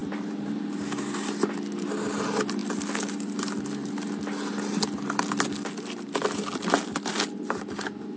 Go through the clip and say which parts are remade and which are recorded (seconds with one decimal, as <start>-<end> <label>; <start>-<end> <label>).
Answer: 0.0-0.6 remade; 0.6-8.2 recorded